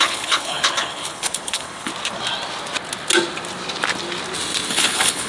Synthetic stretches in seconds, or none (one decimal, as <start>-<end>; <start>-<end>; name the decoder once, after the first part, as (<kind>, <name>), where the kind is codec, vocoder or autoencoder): 0.0-1.9 (codec, HILCodec); 4.7-5.3